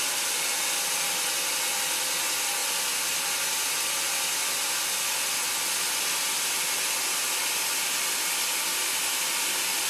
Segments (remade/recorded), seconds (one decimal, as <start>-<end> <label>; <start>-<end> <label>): 0.0-9.9 recorded